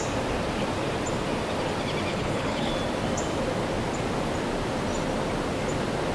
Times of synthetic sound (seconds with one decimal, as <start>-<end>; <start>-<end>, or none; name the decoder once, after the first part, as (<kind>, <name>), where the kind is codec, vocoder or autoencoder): 2.1-2.7 (codec, HILCodec)

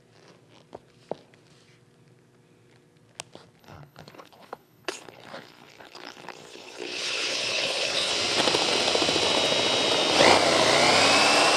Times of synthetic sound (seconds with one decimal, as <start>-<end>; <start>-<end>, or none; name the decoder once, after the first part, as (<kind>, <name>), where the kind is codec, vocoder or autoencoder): 3.6-8.1 (codec, HILCodec)